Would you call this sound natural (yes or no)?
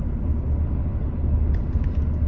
yes